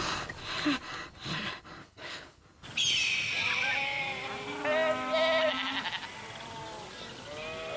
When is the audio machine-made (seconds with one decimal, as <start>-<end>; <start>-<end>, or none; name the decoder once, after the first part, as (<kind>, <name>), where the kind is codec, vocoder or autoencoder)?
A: 1.8-2.4 (codec, HILCodec)